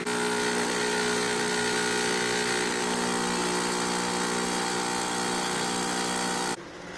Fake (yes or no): no